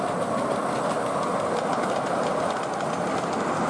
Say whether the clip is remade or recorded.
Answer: recorded